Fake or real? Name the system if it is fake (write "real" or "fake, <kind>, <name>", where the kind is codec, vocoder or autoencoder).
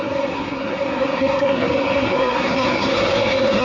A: fake, codec, SNAC